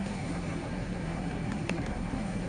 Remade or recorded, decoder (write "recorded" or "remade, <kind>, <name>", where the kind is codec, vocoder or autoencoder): remade, codec, SNAC